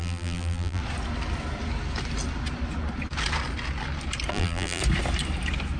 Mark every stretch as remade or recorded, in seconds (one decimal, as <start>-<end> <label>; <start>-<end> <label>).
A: 0.0-0.8 remade; 0.8-4.3 recorded; 4.3-4.8 remade; 4.8-5.8 recorded